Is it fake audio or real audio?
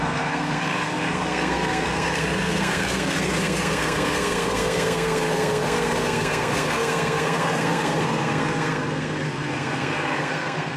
fake